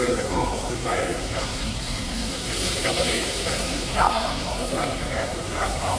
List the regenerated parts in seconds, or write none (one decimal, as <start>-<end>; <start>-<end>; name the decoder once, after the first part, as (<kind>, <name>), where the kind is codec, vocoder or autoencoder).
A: 0.0-6.0 (codec, SNAC)